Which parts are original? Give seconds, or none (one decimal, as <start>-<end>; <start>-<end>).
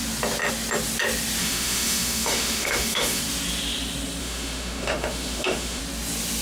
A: 0.0-1.4; 3.2-4.2; 5.8-6.4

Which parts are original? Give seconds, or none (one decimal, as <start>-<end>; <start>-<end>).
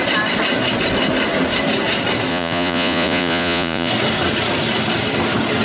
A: 0.0-2.3; 3.9-5.6